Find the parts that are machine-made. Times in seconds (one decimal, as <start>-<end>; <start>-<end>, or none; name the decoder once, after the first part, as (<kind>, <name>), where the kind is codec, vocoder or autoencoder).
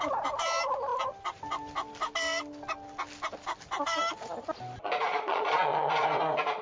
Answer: 5.1-5.9 (vocoder, Vocos)